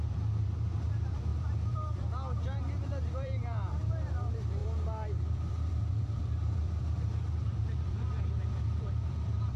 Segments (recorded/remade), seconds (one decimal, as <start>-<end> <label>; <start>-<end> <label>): 0.0-9.6 remade